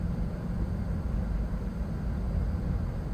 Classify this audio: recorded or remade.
recorded